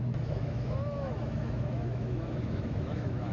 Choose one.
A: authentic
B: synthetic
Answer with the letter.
B